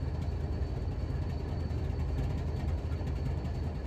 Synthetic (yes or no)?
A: no